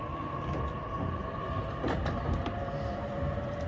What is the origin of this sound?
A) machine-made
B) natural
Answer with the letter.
B